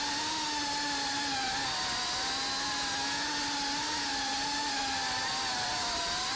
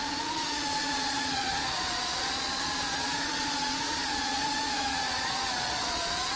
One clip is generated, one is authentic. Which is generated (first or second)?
second